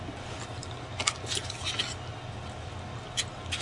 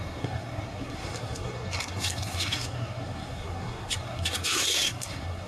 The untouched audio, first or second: first